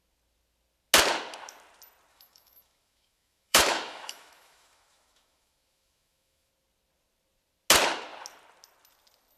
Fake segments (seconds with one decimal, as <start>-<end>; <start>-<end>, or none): 2.1-6.5